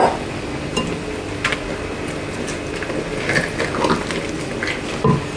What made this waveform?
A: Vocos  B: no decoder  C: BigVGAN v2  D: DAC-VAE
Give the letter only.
B